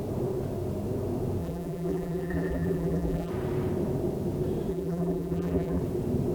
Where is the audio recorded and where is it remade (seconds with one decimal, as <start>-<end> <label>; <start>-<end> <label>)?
0.0-1.4 recorded; 1.4-3.3 remade; 3.3-4.7 recorded; 4.7-5.8 remade; 5.8-6.3 recorded